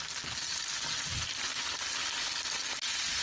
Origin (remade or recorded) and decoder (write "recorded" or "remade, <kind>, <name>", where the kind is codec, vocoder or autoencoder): recorded